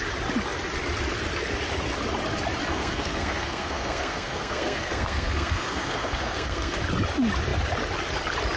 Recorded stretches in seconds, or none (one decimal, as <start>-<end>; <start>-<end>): 0.0-2.7; 6.8-8.6